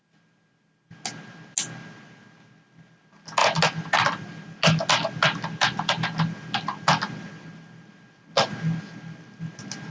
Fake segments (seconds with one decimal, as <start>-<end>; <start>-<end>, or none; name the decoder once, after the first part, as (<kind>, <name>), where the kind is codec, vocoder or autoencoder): none